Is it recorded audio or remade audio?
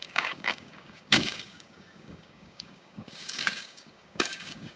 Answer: remade